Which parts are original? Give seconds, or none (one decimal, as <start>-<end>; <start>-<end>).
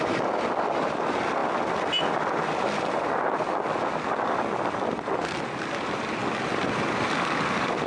0.0-7.9